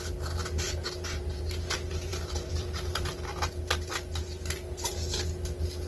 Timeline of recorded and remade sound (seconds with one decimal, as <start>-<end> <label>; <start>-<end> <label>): 0.0-2.1 recorded; 2.1-4.4 remade; 4.4-5.9 recorded